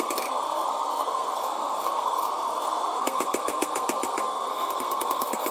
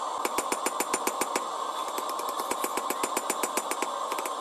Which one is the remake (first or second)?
first